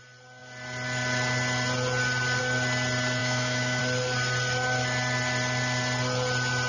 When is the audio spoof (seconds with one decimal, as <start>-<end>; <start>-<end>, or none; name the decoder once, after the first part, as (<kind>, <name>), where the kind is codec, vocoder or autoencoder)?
3.2-3.8 (autoencoder, DAC-VAE)

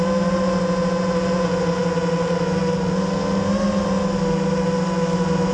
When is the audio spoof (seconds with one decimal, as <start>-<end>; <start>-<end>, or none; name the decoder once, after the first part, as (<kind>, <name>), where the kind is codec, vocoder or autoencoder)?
none

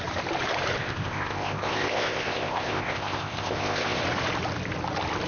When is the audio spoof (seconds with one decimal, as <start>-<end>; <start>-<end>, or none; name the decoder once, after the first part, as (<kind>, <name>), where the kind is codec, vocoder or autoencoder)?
0.8-4.0 (codec, ZipCodec)

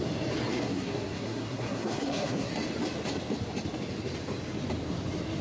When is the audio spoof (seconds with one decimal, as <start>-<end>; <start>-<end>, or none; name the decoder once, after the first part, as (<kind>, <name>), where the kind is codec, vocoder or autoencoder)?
0.5-2.5 (codec, SNAC)

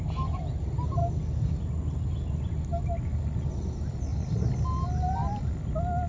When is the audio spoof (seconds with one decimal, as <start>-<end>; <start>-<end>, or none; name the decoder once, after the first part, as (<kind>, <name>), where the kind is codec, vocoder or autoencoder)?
none